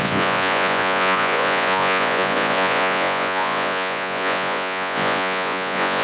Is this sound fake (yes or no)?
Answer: yes